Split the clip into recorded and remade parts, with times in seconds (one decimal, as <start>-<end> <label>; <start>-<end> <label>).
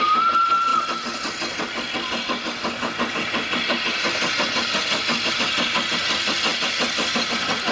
0.0-6.5 recorded; 6.5-7.3 remade; 7.3-7.7 recorded